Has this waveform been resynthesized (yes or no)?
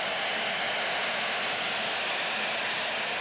no